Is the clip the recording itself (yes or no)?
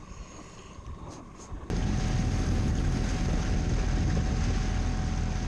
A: yes